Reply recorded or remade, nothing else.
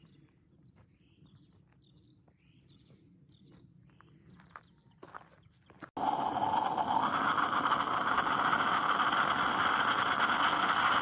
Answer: recorded